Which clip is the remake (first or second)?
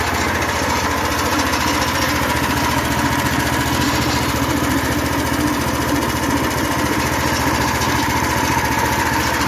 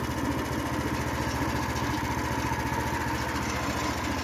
first